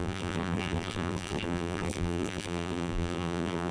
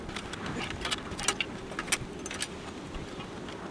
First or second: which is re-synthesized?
first